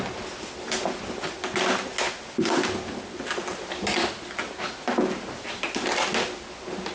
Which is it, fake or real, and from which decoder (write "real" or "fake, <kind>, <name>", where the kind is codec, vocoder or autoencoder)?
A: real